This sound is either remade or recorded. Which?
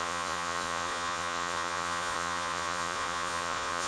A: remade